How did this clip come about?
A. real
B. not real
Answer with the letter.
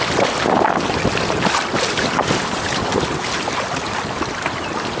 A